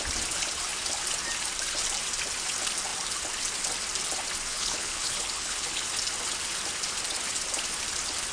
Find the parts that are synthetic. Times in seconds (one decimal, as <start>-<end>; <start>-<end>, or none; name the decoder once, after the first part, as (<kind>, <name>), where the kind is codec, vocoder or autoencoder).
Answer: 4.5-5.8 (codec, HILCodec)